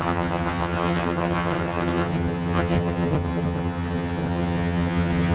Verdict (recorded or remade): remade